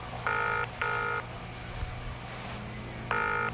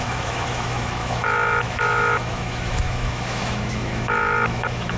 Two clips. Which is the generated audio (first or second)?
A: second